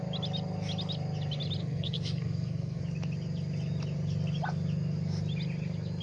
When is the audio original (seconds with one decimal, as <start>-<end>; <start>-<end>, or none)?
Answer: 0.0-1.6; 2.8-6.0